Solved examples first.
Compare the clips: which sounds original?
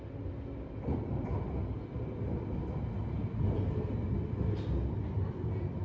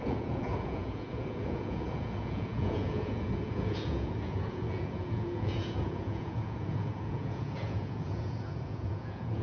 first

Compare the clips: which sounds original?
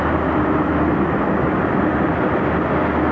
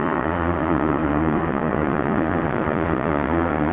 first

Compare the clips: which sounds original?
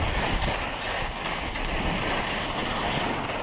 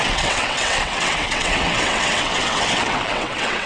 first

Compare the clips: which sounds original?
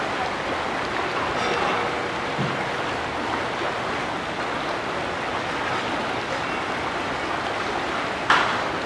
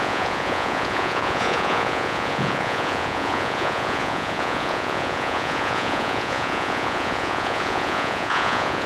first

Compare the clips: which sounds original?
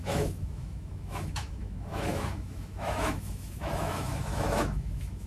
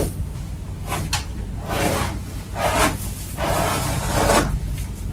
second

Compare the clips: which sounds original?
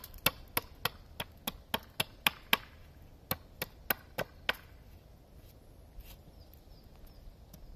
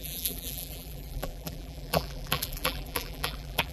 first